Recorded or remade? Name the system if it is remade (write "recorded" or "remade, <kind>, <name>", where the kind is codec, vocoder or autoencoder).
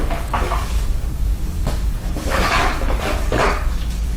remade, codec, DAC